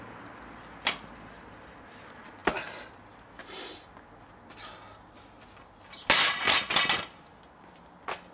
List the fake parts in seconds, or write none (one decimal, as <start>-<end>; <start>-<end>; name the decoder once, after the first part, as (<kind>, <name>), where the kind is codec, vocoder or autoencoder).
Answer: 2.4-3.4 (vocoder, BigVGAN v2)